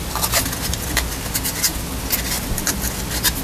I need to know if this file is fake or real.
real